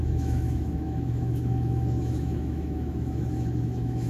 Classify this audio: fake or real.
fake